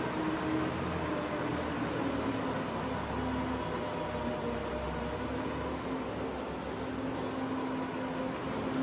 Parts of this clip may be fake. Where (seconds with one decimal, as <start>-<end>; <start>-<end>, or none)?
none